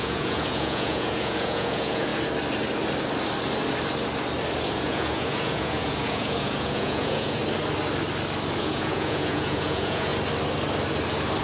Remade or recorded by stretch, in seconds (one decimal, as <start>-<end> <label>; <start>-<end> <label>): 0.0-2.1 remade; 2.1-4.7 recorded; 4.7-7.4 remade; 7.4-8.6 recorded; 8.6-10.1 remade; 10.1-11.4 recorded